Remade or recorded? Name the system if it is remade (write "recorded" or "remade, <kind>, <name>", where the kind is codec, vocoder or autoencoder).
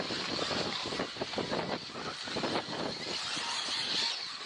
recorded